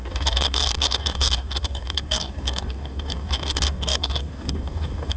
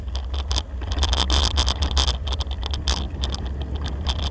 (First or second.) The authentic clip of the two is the second